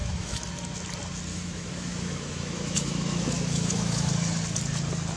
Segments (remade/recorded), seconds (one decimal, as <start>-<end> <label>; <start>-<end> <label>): 0.0-0.5 remade; 0.5-1.3 recorded; 1.3-4.1 remade; 4.1-5.2 recorded